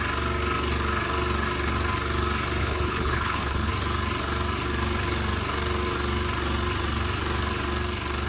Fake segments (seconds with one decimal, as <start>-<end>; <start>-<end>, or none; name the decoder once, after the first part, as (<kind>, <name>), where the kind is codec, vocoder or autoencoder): 2.6-3.7 (codec, HILCodec)